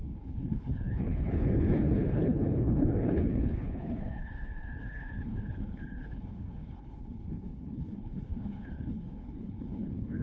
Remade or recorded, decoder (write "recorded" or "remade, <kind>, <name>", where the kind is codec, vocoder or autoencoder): remade, codec, HILCodec